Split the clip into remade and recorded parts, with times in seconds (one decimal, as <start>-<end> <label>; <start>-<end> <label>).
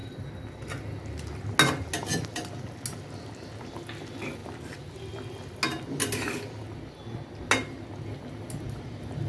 0.0-9.3 recorded